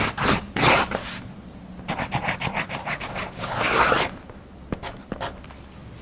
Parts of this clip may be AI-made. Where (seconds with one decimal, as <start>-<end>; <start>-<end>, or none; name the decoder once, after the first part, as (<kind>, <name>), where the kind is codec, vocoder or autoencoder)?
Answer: 2.8-3.5 (codec, DAC)